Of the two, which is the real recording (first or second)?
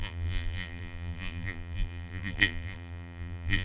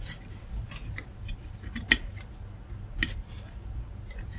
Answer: second